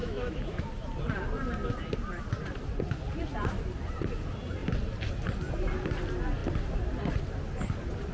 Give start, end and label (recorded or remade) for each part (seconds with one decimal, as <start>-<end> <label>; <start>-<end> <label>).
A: 0.0-0.6 remade; 0.6-8.1 recorded

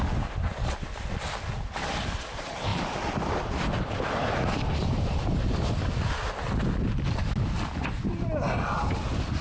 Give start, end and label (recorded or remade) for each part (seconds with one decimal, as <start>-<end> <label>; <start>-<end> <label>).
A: 0.0-9.4 recorded

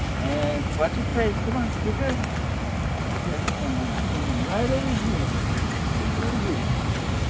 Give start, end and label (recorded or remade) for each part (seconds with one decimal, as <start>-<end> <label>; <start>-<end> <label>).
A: 0.0-7.3 recorded

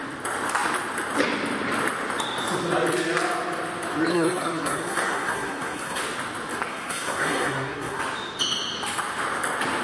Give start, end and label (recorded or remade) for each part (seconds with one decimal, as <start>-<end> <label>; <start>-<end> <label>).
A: 0.0-4.1 recorded; 4.1-6.0 remade; 6.0-6.7 recorded; 6.7-8.0 remade; 8.0-9.8 recorded

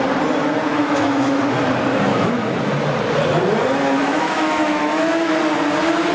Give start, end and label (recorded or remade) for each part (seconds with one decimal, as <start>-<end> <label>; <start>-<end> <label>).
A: 0.0-0.7 recorded; 0.7-1.4 remade; 1.4-2.1 recorded; 2.1-2.6 remade; 2.6-4.0 recorded; 4.0-5.4 remade; 5.4-6.1 recorded

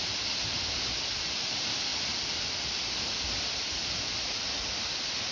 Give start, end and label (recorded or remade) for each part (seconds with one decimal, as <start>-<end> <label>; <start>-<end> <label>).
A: 0.0-5.3 recorded

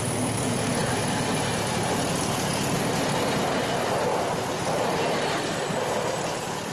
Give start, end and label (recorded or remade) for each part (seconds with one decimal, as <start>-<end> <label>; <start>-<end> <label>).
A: 0.0-6.7 recorded

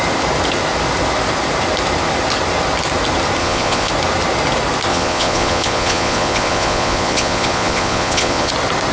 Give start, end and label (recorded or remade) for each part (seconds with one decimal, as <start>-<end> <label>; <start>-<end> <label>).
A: 0.0-3.4 recorded; 3.4-3.9 remade; 3.9-4.9 recorded; 4.9-8.5 remade; 8.5-8.9 recorded